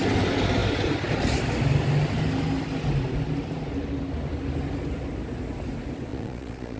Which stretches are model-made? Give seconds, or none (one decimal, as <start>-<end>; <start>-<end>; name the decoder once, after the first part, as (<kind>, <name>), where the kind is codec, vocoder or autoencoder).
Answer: 6.1-6.8 (vocoder, Vocos)